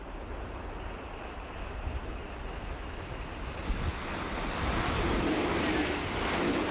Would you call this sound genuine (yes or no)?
yes